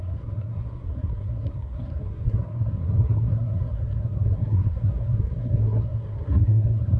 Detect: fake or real fake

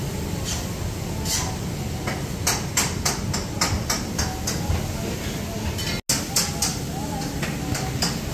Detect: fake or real real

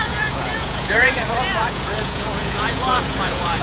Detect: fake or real fake